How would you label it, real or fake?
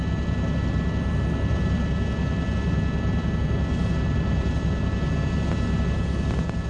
real